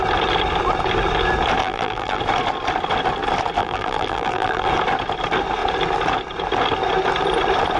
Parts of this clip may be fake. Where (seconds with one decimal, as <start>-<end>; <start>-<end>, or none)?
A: 1.6-2.2; 3.6-4.7